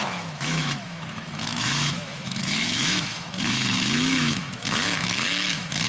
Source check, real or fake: fake